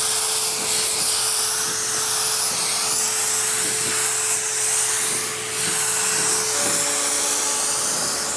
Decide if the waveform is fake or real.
real